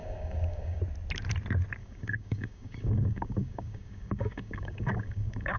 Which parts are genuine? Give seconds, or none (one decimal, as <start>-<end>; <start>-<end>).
0.8-1.8